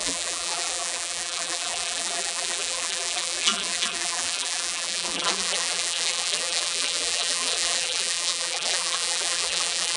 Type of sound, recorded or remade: remade